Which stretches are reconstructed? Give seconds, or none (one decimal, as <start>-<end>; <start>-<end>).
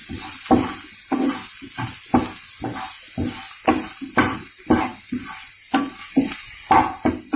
6.0-6.7